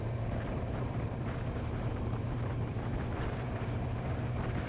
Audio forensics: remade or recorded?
remade